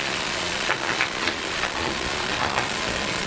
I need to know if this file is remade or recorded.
remade